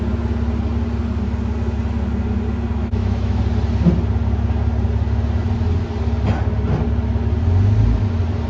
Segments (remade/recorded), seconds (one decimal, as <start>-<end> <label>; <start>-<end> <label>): 0.0-2.8 recorded; 2.8-3.4 remade; 3.4-8.5 recorded